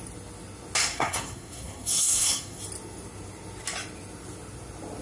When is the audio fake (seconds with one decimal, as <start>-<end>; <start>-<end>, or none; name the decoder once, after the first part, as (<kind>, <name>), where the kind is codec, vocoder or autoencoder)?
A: 0.8-2.6 (codec, SNAC)